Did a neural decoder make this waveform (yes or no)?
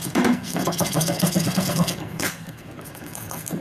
yes